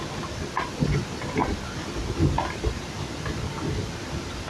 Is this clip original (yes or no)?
yes